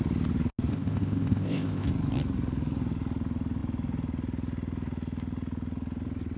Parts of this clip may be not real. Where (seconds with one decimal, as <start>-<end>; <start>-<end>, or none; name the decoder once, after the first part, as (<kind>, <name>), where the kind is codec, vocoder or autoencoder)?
0.7-1.9 (codec, ZipCodec)